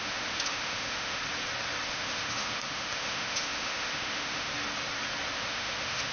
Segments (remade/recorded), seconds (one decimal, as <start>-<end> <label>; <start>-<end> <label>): 0.0-1.2 remade; 1.2-1.9 recorded; 1.9-4.5 remade; 4.5-5.4 recorded; 5.4-6.1 remade